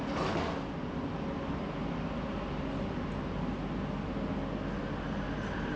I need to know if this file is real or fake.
real